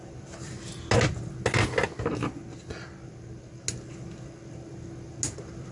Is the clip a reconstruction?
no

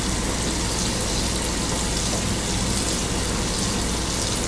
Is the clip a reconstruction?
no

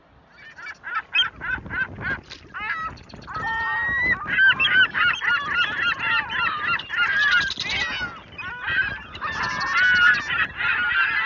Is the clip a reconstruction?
no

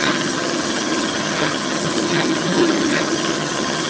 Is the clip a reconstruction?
yes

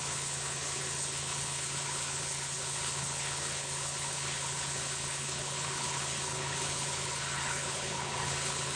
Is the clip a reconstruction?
yes